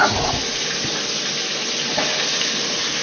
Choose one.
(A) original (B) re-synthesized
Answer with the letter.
A